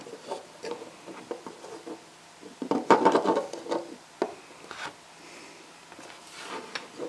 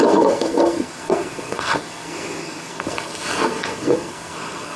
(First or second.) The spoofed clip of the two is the second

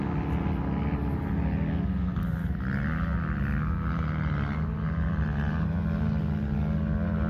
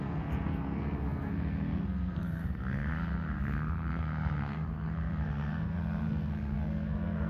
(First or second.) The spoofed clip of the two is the second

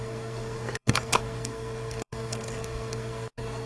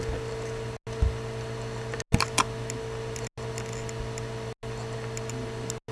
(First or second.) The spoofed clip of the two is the first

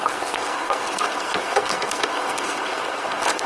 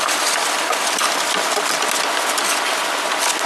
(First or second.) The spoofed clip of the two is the first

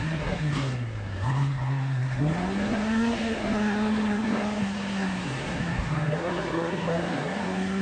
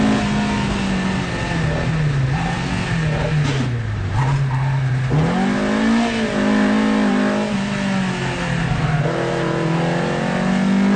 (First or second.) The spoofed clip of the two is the first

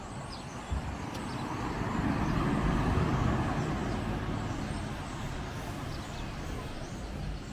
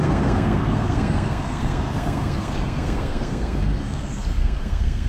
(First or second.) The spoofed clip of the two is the second